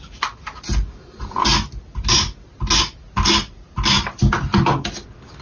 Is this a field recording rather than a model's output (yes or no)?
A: yes